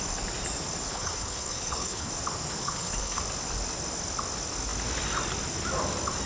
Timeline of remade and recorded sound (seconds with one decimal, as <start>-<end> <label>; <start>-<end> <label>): 0.0-0.9 recorded; 0.9-2.1 remade; 2.1-2.6 recorded; 2.6-3.2 remade; 3.2-6.3 recorded